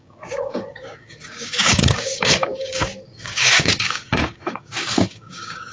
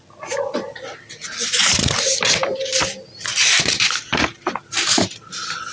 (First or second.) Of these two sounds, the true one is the second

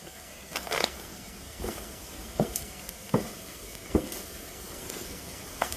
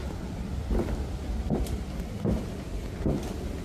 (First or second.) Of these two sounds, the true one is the second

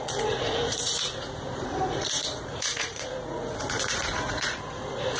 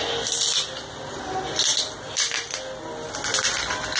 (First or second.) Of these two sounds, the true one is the second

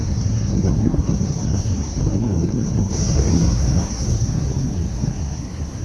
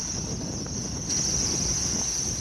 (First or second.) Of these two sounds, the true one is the second